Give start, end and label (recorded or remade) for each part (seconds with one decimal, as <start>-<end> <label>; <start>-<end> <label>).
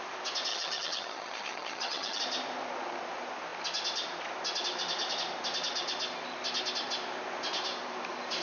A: 0.0-0.5 recorded; 0.5-2.2 remade; 2.2-8.4 recorded